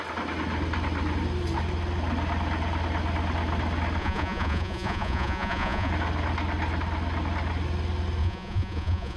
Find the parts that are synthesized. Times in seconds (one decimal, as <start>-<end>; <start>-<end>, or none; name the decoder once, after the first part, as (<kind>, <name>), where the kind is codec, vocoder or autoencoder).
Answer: 4.0-5.9 (vocoder, Vocos); 8.2-9.2